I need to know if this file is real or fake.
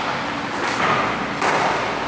real